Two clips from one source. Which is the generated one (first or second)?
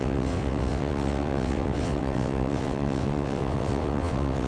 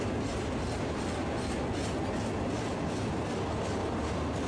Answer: first